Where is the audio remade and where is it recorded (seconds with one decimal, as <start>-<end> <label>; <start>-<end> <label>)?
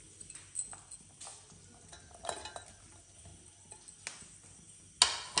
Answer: 0.0-5.4 recorded